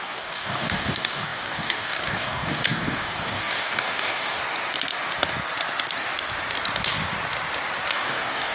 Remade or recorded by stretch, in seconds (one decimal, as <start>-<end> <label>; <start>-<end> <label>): 0.0-4.4 remade; 4.4-7.9 recorded; 7.9-8.5 remade